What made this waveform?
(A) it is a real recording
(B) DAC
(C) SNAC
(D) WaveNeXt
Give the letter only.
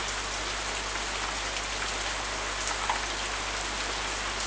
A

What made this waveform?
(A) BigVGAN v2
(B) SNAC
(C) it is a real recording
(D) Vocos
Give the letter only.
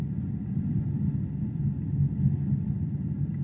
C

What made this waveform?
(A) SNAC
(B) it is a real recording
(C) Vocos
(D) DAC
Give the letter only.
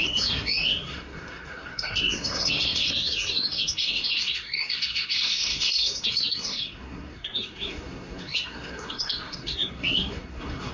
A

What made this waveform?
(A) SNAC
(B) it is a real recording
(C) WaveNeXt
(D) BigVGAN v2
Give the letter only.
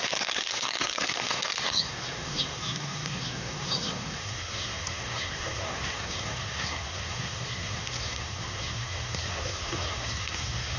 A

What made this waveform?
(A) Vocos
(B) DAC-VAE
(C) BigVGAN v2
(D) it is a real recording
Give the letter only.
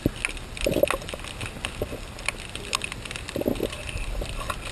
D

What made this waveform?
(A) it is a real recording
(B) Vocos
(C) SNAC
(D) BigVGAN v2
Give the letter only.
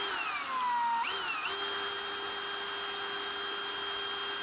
A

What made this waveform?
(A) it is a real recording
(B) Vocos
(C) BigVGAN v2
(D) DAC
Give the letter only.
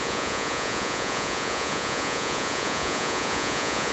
B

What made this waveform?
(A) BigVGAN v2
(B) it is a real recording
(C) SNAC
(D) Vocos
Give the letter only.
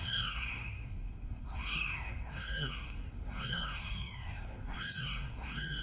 C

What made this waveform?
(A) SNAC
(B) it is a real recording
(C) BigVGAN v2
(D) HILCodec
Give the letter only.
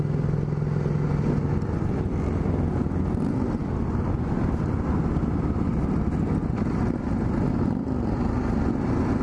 B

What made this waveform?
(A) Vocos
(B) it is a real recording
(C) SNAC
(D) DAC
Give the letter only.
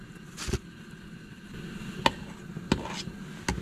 B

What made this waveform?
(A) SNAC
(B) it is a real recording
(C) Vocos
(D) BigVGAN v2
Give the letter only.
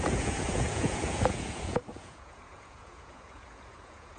C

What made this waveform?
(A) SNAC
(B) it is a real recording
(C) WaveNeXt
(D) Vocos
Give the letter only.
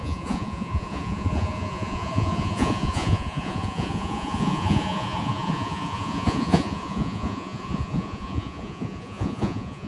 D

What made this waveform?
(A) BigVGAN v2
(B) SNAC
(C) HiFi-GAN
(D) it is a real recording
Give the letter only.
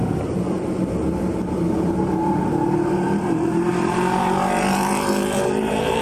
A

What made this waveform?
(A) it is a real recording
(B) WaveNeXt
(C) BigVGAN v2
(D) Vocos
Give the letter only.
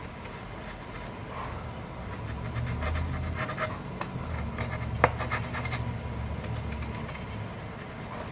A